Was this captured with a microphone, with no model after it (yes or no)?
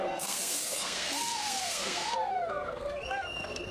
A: no